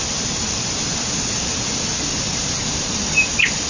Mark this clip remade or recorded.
recorded